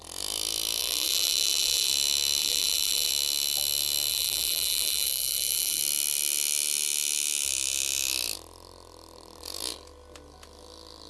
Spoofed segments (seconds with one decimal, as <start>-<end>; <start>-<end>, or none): 0.8-1.9; 2.4-3.1; 4.1-5.8